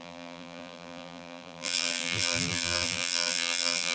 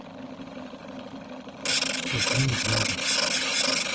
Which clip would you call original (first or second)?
second